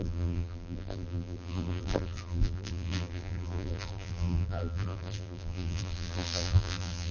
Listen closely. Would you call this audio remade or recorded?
remade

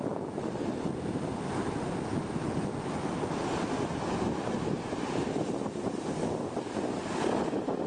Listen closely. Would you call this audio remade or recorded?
recorded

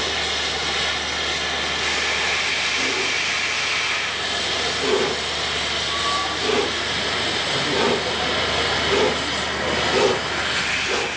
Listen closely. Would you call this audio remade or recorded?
recorded